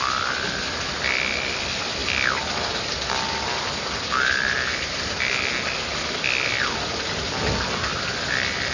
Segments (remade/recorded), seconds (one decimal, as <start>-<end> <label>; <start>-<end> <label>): 0.0-8.7 recorded